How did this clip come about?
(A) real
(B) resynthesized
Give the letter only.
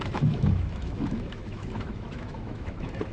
B